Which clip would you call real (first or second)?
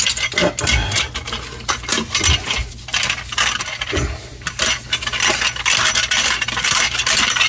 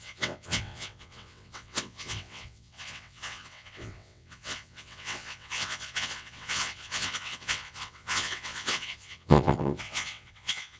first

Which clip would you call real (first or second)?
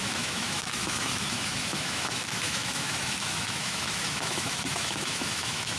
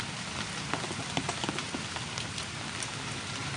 second